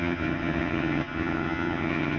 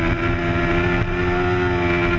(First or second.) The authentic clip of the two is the second